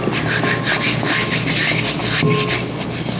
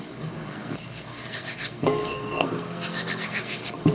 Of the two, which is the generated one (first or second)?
second